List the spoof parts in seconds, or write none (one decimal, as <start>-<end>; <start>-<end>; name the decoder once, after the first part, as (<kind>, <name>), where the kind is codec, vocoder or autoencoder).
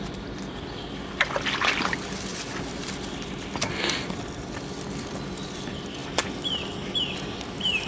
none